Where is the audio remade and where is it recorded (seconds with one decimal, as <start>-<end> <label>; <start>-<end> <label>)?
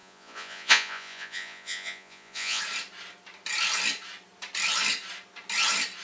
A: 0.0-2.6 remade; 2.6-6.0 recorded